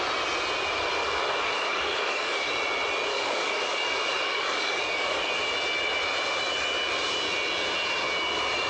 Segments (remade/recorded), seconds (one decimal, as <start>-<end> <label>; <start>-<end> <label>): 0.0-1.0 recorded; 1.0-2.5 remade; 2.5-3.1 recorded; 3.1-5.3 remade; 5.3-8.7 recorded